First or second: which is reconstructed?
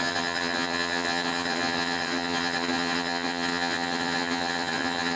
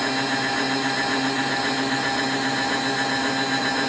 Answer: first